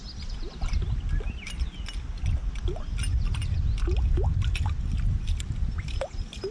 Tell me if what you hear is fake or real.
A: real